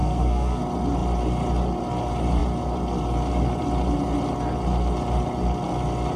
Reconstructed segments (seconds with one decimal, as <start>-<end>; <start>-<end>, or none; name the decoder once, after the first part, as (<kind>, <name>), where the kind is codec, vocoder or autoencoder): 0.0-0.6 (codec, SNAC)